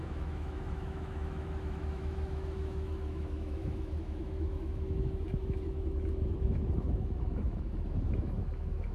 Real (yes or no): no